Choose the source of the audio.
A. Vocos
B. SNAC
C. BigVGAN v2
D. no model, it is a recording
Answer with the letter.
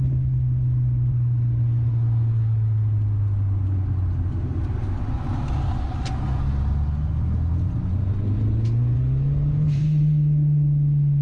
D